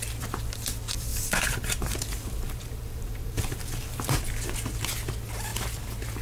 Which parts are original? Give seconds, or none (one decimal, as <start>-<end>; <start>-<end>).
0.0-1.1; 4.2-6.2